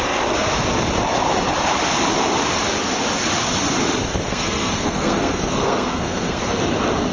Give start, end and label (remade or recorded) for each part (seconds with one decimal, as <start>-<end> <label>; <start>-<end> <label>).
0.0-4.3 recorded; 4.3-6.5 remade; 6.5-7.1 recorded